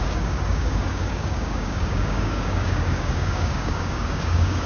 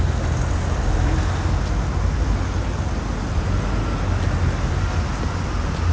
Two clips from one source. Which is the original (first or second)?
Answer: second